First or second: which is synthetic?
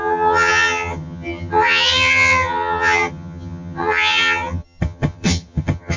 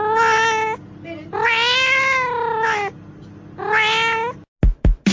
first